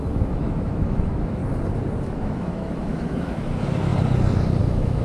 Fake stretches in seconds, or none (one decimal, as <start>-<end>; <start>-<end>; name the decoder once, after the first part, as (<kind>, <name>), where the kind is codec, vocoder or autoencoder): 0.0-1.4 (autoencoder, DAC-VAE); 2.0-3.9; 4.6-5.0